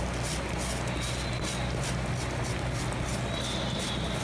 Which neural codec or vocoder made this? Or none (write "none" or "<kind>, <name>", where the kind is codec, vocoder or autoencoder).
none